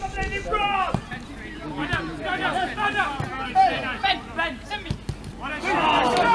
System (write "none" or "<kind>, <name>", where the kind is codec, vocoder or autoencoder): none